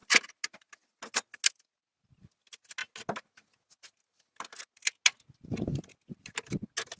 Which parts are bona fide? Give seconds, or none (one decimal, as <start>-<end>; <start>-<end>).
0.0-7.0